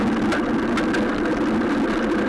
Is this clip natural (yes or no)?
yes